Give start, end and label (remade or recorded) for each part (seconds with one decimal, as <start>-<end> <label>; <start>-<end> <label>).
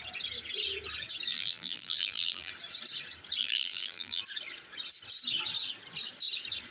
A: 0.0-1.3 recorded; 1.3-2.5 remade; 2.5-3.4 recorded; 3.4-4.2 remade; 4.2-6.7 recorded